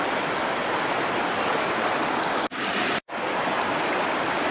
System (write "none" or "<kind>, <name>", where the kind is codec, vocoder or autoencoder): vocoder, BigVGAN v2